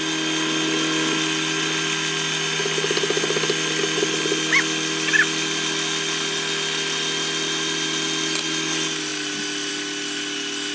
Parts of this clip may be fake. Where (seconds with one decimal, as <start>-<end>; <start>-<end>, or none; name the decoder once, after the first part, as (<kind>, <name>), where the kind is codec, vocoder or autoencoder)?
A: none